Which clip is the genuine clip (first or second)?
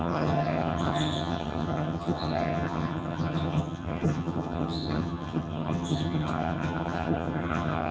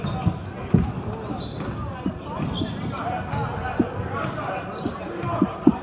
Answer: second